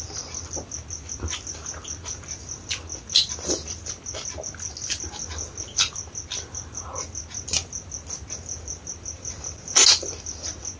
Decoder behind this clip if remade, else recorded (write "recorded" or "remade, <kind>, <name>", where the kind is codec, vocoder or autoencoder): recorded